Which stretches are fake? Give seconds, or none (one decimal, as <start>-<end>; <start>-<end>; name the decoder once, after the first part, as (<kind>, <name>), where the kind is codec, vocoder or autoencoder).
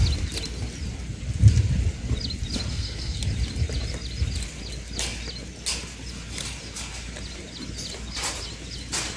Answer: 2.7-3.2 (codec, SNAC)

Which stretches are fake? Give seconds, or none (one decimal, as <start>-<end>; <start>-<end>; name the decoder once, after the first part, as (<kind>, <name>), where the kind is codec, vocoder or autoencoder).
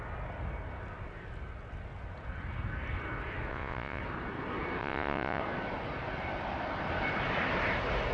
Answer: 3.5-4.0 (vocoder, Vocos); 4.8-5.4